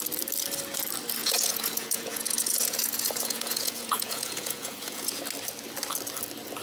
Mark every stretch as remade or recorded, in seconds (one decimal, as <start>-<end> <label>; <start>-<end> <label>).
0.0-1.2 recorded; 1.2-5.2 remade; 5.2-6.6 recorded

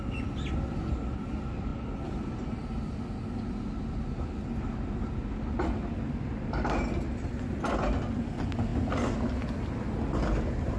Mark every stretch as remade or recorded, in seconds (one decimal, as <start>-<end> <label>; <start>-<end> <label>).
0.0-10.8 recorded

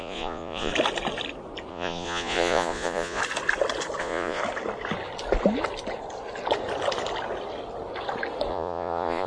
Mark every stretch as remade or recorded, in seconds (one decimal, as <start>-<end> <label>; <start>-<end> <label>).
0.0-0.7 remade; 0.7-1.7 recorded; 1.7-3.2 remade; 3.2-4.0 recorded; 4.0-4.4 remade; 4.4-8.5 recorded; 8.5-9.3 remade

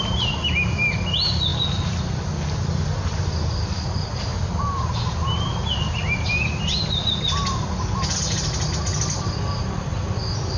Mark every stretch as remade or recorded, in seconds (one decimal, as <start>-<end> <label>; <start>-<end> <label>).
0.0-10.6 recorded

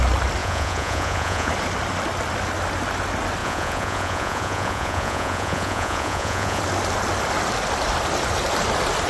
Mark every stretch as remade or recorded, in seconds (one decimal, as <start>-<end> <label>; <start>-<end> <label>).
0.0-0.4 recorded; 0.4-1.5 remade; 1.5-3.4 recorded; 3.4-6.6 remade; 6.6-9.1 recorded